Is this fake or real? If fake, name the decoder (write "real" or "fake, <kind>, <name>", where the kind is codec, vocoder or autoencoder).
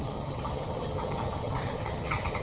fake, vocoder, HiFi-GAN